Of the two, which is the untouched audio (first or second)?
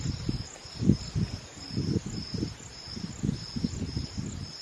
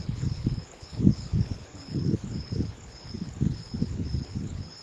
first